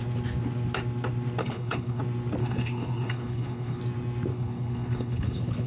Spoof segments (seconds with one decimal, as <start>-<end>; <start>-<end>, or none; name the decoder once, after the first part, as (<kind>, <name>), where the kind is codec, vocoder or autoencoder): 1.4-2.0 (codec, HILCodec); 2.4-3.8; 4.3-5.7